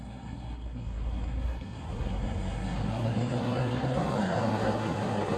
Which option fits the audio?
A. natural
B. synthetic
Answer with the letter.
B